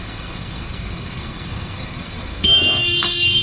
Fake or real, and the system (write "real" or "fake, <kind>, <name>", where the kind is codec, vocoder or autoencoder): fake, codec, SNAC